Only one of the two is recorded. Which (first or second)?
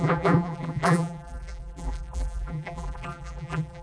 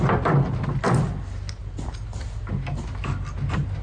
second